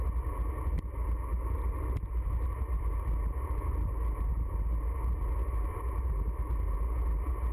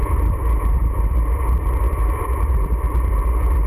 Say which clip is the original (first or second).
first